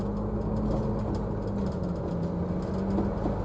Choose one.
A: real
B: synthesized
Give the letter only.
A